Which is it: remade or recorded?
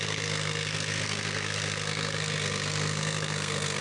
remade